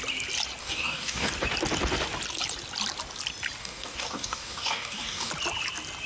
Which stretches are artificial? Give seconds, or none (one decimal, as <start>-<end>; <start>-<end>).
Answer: 0.6-1.3; 3.6-5.3